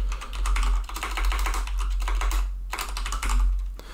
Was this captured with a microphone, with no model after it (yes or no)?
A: yes